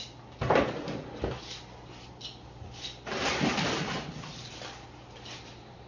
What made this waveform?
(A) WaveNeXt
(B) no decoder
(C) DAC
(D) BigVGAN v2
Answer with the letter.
B